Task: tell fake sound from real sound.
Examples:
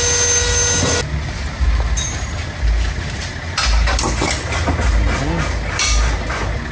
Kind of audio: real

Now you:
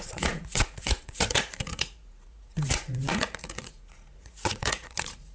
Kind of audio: fake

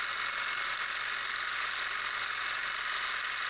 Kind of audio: real